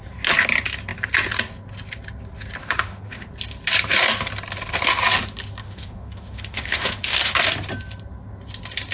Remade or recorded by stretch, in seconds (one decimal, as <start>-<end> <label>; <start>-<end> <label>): 0.0-2.6 recorded; 2.6-3.3 remade; 3.3-5.6 recorded; 5.6-7.3 remade; 7.3-8.9 recorded